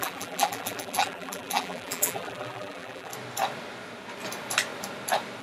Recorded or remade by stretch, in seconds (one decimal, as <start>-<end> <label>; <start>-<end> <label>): 0.0-3.1 remade; 3.1-5.4 recorded